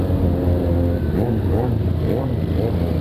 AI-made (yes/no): no